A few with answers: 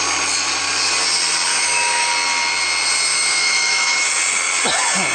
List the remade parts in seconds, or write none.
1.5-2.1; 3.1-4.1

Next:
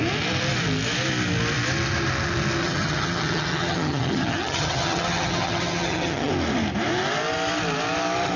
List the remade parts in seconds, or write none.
2.6-6.3